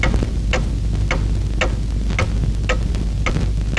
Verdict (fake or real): real